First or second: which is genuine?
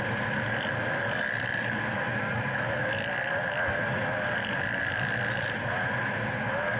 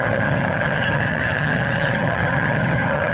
first